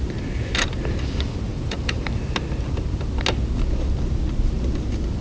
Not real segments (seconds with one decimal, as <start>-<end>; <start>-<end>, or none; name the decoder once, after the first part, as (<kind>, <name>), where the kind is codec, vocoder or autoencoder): 1.5-2.2 (vocoder, BigVGAN v2)